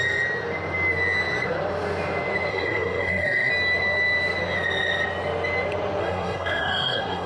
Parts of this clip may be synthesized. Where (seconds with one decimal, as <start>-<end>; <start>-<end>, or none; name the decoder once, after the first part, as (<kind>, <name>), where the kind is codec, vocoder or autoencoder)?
2.5-3.5 (codec, SNAC); 6.0-7.3